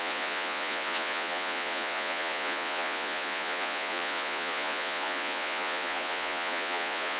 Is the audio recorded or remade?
remade